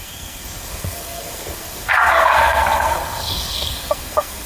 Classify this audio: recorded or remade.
remade